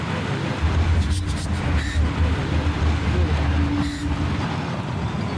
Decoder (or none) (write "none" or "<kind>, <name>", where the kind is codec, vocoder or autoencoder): none